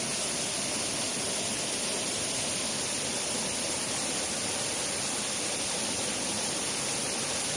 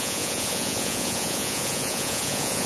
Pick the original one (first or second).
first